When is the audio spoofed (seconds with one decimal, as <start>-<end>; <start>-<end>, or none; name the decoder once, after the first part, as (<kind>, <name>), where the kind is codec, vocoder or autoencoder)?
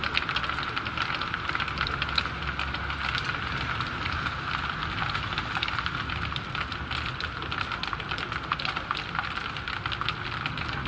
7.9-9.1 (vocoder, BigVGAN v2)